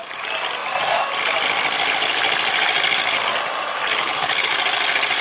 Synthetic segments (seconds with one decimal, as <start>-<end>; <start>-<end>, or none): 4.0-4.5